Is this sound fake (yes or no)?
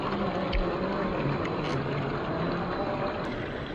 no